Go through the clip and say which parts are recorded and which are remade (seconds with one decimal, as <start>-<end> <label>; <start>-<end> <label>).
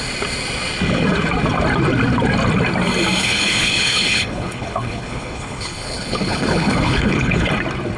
0.0-3.2 recorded; 3.2-7.5 remade; 7.5-8.0 recorded